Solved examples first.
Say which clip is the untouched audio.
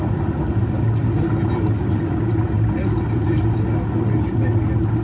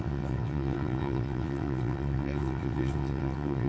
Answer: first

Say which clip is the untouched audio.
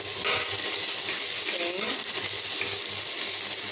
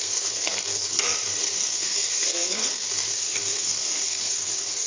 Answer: first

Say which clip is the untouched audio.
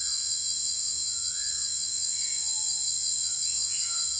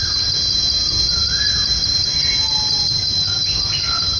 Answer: second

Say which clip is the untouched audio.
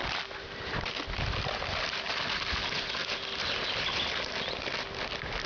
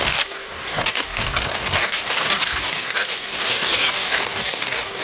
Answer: first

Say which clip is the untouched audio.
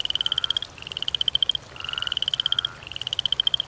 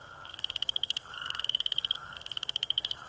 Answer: first